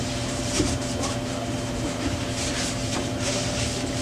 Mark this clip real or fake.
fake